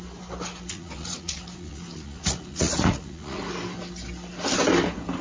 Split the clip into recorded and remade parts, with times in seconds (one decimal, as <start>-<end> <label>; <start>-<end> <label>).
0.0-0.7 recorded; 0.7-3.4 remade; 3.4-5.2 recorded